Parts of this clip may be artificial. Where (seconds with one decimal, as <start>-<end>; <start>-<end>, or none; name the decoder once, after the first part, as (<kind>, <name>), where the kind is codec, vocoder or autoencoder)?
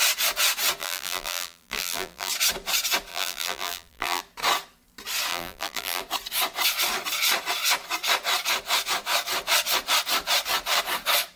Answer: 0.8-2.3 (vocoder, BigVGAN v2); 3.1-4.2; 5.3-6.0